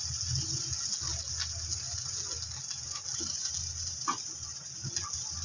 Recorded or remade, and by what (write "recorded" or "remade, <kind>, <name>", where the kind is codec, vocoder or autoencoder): recorded